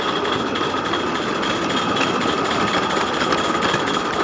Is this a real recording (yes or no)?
yes